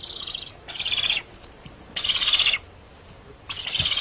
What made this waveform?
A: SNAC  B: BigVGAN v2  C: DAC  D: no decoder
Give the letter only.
D